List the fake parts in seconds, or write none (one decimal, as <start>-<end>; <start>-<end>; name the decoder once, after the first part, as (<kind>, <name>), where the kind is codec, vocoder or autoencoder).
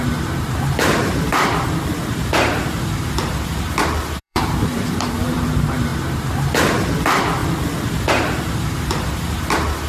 0.0-5.9 (vocoder, BigVGAN v2); 6.8-7.4; 8.1-9.9